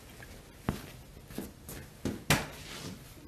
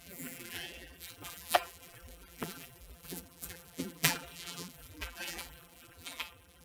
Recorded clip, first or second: first